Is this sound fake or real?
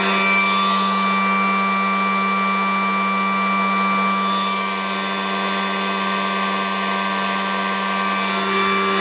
real